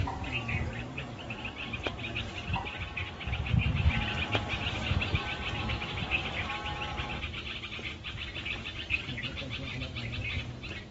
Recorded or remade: recorded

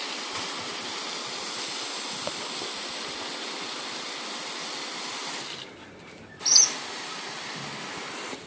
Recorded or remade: recorded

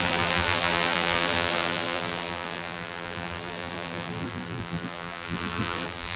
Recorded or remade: remade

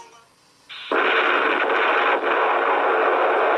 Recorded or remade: recorded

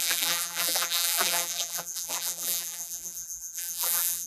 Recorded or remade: remade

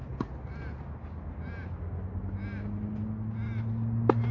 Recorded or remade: recorded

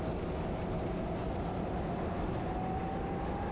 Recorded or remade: remade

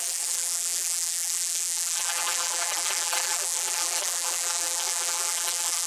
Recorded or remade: remade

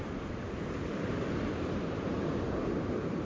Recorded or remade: remade